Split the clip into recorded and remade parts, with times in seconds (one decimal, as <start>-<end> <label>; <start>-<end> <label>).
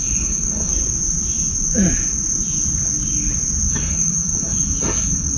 0.0-0.7 remade; 0.7-3.7 recorded; 3.7-5.4 remade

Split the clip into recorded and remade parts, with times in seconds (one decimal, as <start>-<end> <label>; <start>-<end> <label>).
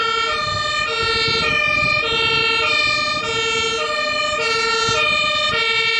0.0-6.0 recorded